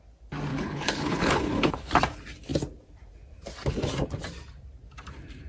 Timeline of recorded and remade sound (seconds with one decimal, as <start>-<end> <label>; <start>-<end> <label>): 0.0-0.5 recorded; 0.5-2.0 remade; 2.0-5.5 recorded